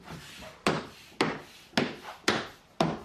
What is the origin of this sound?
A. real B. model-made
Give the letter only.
A